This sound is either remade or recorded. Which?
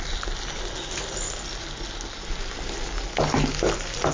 recorded